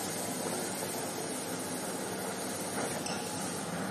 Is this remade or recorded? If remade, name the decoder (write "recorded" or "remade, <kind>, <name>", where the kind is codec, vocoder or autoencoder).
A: recorded